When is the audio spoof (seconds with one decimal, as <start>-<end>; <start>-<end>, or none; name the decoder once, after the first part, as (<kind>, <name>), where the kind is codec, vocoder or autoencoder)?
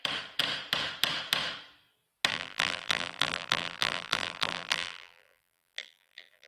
2.3-6.5 (vocoder, BigVGAN v2)